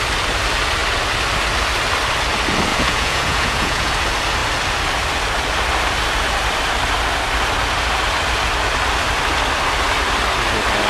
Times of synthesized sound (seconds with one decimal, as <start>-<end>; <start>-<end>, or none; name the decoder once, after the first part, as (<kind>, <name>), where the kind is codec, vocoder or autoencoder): 2.7-3.9 (vocoder, Vocos)